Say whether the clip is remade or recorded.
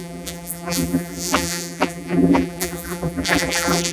remade